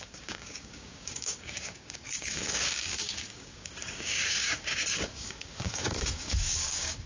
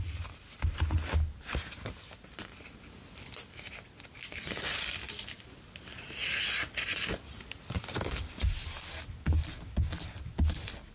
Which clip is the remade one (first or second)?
first